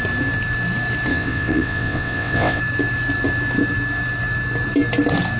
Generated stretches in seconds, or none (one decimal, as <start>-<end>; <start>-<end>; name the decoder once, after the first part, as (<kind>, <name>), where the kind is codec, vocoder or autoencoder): 1.1-2.6 (vocoder, WaveNeXt)